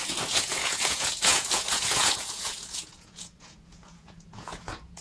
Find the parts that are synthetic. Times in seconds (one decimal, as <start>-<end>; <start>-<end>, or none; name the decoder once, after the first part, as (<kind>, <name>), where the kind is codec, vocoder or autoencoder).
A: 0.0-5.0 (vocoder, Vocos)